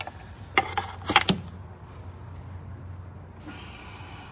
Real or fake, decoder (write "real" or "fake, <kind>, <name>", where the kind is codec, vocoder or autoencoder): real